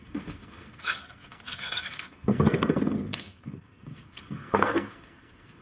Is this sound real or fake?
fake